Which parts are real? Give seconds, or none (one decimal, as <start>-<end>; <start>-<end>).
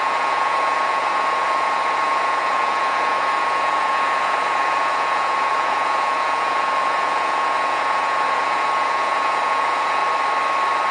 10.0-10.9